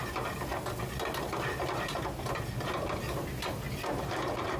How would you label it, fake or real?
real